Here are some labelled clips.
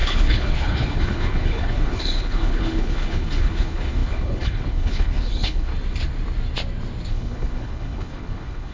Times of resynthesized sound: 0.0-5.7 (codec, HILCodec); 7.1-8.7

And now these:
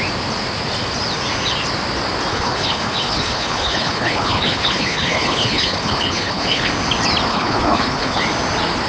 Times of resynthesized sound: 2.3-6.7 (codec, HILCodec); 7.3-8.2

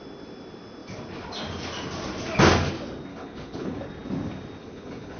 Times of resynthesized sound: 3.1-3.8 (codec, HILCodec); 4.6-5.2

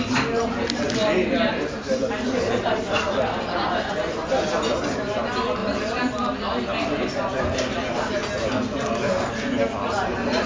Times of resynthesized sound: none

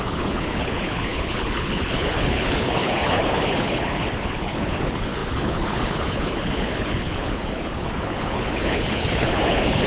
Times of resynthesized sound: 0.0-9.9 (codec, HILCodec)

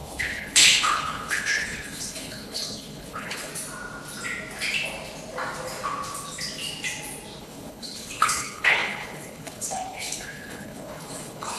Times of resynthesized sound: 0.0-3.5 (codec, HILCodec); 7.4-11.6